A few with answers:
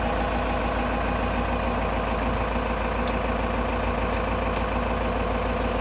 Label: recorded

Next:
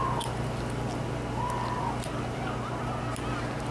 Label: recorded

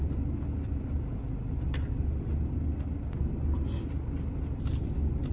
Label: recorded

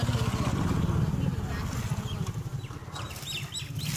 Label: recorded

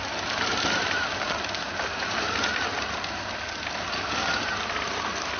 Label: recorded